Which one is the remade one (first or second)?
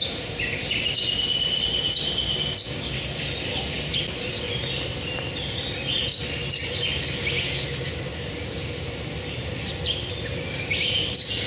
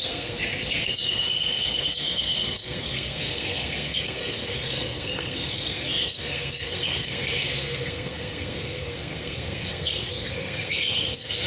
second